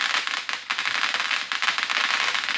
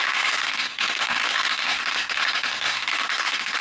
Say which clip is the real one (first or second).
first